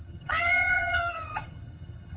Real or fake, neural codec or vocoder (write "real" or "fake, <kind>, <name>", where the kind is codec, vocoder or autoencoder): fake, vocoder, HiFi-GAN